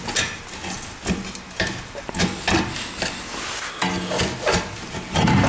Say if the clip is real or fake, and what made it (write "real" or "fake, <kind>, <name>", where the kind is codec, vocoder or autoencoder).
real